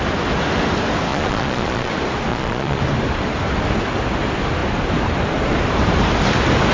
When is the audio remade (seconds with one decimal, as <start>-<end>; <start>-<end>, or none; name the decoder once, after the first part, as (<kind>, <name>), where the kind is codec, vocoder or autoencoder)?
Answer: 1.1-1.9 (vocoder, Vocos); 2.3-2.8